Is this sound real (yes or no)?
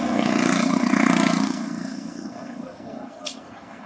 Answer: no